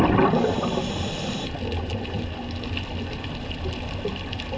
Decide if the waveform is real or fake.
real